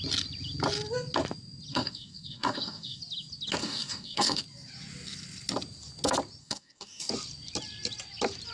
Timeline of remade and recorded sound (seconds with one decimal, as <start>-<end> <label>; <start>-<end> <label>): 0.0-1.7 recorded; 1.7-3.0 remade; 3.0-3.6 recorded; 3.6-4.4 remade; 4.4-6.4 recorded; 6.4-7.1 remade; 7.1-8.5 recorded